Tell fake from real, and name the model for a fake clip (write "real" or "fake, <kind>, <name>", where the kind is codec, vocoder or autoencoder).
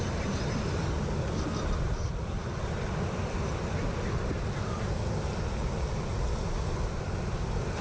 real